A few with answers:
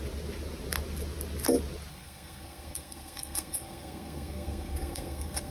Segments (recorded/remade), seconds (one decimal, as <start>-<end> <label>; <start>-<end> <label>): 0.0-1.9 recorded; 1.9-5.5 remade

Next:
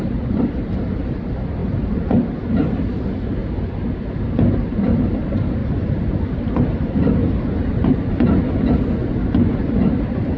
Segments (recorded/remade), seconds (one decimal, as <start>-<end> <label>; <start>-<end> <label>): 0.0-3.4 remade; 3.4-4.7 recorded; 4.7-10.4 remade

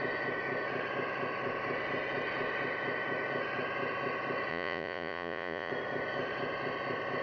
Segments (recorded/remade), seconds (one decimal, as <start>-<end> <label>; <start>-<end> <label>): 0.0-4.5 recorded; 4.5-5.7 remade; 5.7-7.2 recorded

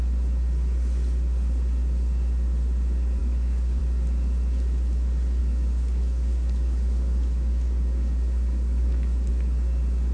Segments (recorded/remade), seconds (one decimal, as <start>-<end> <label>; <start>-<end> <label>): 0.0-3.2 recorded; 3.2-3.8 remade; 3.8-5.4 recorded; 5.4-9.3 remade; 9.3-10.1 recorded

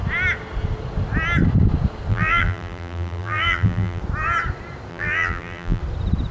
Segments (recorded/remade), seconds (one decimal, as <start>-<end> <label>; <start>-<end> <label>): 0.0-2.1 recorded; 2.1-4.0 remade; 4.0-4.9 recorded; 4.9-5.8 remade; 5.8-6.3 recorded